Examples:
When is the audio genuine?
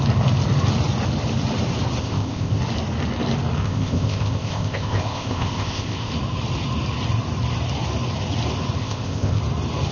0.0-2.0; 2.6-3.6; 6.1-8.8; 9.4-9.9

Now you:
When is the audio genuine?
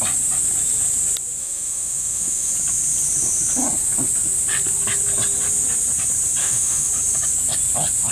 0.0-1.4; 2.5-6.4; 6.9-8.1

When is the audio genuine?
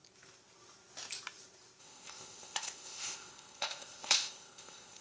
0.0-1.8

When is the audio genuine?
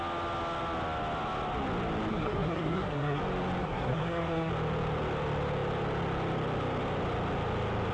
0.0-2.1; 3.2-3.6; 4.5-7.9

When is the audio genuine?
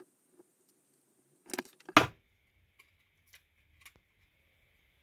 0.0-5.0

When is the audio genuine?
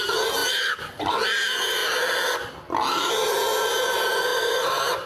0.0-0.4; 1.1-4.3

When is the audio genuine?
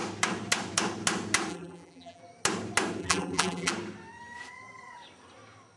0.0-1.5; 2.2-3.0; 3.7-5.8